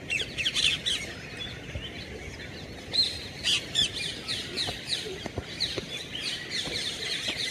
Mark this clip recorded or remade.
recorded